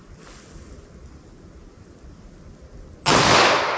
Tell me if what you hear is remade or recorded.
recorded